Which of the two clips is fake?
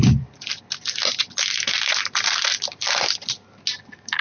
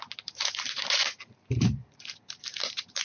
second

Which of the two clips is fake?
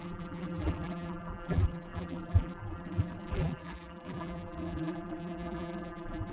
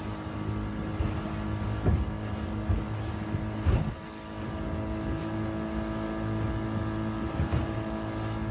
first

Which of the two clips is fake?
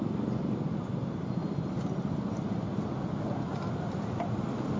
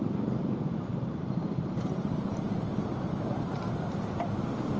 second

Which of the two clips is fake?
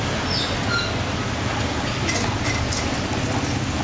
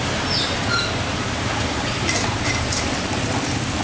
second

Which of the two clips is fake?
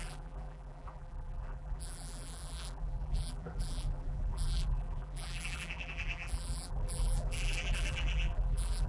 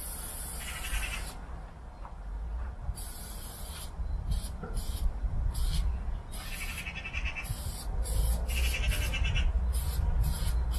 first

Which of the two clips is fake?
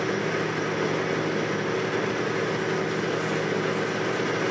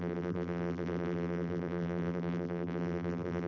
second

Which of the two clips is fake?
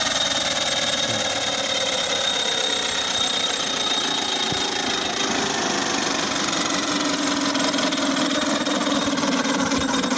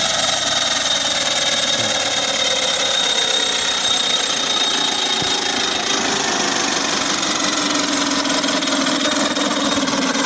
first